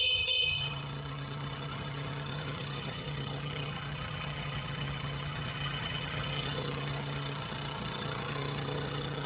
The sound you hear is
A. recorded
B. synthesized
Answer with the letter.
B